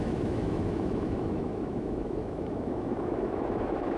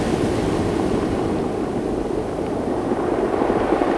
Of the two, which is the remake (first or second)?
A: first